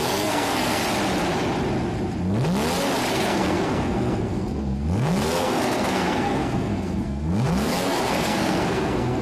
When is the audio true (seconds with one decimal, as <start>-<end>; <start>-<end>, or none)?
0.8-3.1